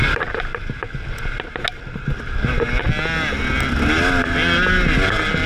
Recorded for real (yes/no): yes